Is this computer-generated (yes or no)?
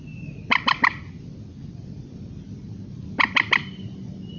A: no